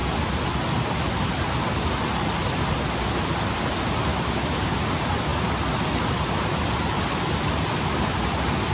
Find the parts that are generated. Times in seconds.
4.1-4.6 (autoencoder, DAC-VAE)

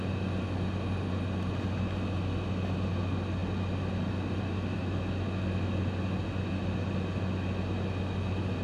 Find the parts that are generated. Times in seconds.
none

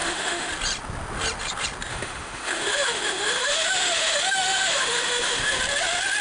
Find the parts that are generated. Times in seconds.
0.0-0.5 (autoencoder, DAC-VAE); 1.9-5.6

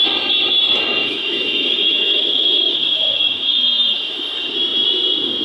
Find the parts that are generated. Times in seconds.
1.0-4.2 (autoencoder, DAC-VAE)

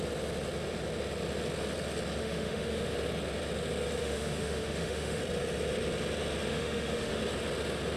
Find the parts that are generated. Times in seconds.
2.2-2.9 (autoencoder, DAC-VAE); 4.0-5.2; 6.5-7.2

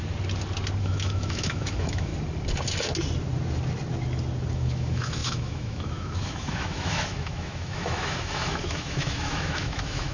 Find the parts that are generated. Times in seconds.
0.8-2.1 (autoencoder, DAC-VAE); 4.5-10.1